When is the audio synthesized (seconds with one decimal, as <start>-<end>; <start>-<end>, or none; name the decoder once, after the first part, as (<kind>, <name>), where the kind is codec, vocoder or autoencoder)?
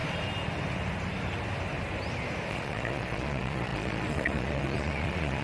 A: 2.5-5.4 (vocoder, Vocos)